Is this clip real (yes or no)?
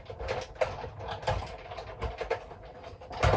yes